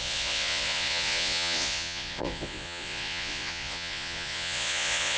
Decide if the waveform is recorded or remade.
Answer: remade